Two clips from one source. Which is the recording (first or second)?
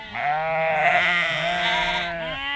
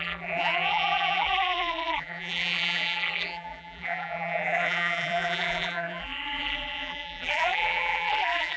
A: first